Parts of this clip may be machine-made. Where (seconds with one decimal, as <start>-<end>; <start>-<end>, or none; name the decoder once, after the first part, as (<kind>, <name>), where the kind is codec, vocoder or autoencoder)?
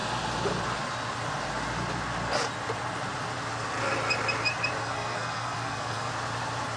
4.8-6.1 (codec, SNAC)